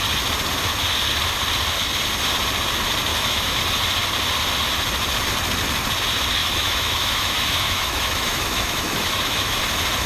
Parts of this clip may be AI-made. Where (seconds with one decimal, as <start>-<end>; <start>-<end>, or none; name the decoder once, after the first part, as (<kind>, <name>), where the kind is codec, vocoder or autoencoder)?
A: 3.1-3.6 (autoencoder, DAC-VAE); 6.4-9.6

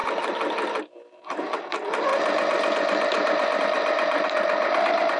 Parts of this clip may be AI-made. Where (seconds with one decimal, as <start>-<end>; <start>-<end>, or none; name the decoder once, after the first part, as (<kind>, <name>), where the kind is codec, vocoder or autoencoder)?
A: 0.8-2.1 (vocoder, BigVGAN v2); 3.6-5.2